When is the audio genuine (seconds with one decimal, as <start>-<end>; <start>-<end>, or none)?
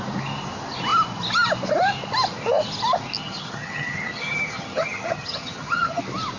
0.0-3.2; 6.0-6.4